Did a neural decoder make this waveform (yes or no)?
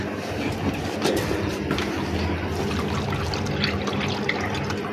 no